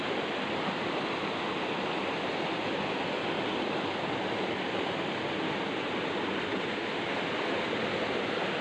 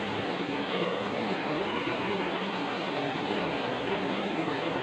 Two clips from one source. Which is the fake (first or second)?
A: second